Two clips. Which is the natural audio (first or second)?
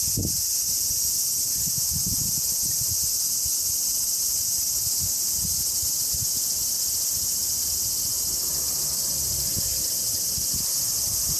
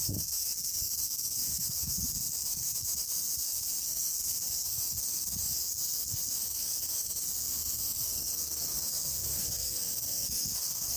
first